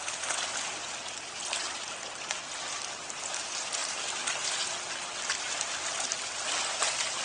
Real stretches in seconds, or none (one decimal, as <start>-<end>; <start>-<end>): 0.0-7.2